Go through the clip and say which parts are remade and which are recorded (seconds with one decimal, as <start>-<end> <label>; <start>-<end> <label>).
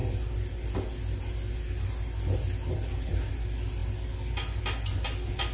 0.0-5.5 recorded